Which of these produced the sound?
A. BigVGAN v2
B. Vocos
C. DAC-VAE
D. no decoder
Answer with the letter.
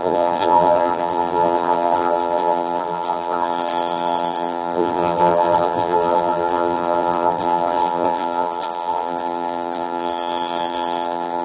A